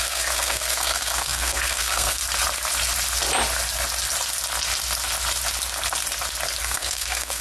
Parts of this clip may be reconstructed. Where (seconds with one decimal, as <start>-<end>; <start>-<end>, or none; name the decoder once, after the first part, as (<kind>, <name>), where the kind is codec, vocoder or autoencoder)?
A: 0.0-2.2 (codec, SNAC); 6.6-7.4